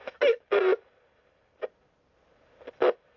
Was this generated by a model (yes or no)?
no